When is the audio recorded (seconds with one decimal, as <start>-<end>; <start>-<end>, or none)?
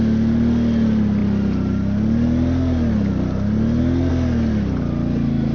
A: 0.0-5.5